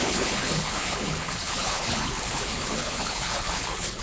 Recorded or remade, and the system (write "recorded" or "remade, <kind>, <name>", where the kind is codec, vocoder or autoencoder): remade, codec, HILCodec